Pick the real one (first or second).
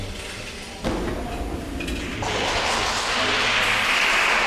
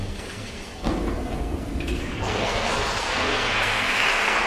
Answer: first